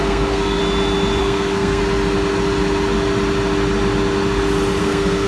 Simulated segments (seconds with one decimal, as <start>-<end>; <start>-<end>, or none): 0.0-0.6; 1.2-1.8; 4.8-5.3